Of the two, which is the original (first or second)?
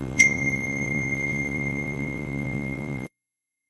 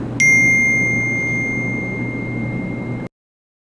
second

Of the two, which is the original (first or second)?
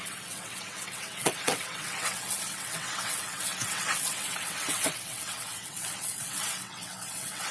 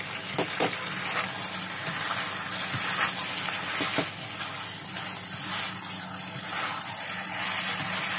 second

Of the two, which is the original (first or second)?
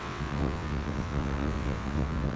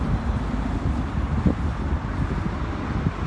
second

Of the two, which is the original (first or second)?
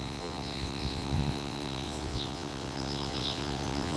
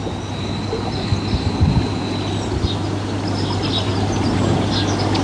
second